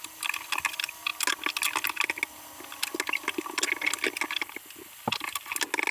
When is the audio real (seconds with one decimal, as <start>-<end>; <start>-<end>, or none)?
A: 0.0-5.9